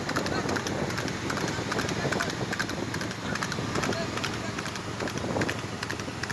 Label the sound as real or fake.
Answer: real